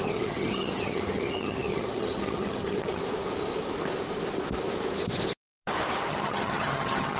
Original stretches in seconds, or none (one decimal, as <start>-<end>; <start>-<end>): 3.0-6.1